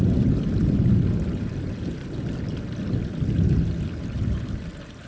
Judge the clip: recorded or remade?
recorded